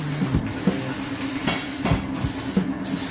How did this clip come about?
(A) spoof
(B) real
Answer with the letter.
B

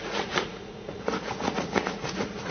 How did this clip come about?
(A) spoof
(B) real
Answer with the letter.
A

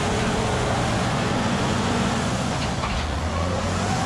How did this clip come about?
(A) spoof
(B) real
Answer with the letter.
A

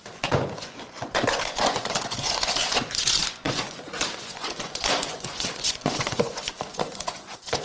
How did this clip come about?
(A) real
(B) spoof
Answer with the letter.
B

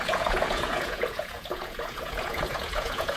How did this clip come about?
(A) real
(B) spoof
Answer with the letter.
B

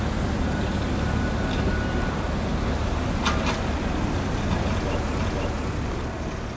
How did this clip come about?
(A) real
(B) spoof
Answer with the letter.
A